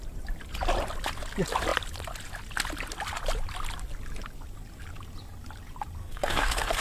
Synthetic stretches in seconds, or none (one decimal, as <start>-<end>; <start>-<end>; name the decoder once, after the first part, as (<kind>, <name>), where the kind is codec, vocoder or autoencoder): 6.0-6.8 (codec, SNAC)